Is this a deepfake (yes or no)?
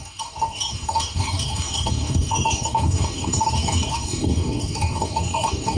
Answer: yes